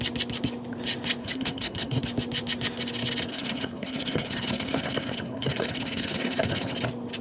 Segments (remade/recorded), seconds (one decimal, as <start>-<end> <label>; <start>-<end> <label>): 0.0-1.2 recorded; 1.2-2.0 remade; 2.0-3.3 recorded; 3.3-6.7 remade; 6.7-7.2 recorded